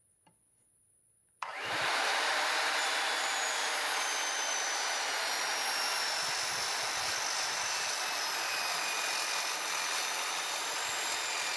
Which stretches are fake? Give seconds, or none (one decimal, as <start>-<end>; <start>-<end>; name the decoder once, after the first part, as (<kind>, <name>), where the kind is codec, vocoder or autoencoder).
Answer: 1.2-5.0 (vocoder, BigVGAN v2)